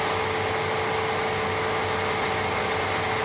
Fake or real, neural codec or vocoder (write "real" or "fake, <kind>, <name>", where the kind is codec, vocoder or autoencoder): real